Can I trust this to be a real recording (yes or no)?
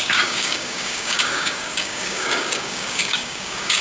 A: no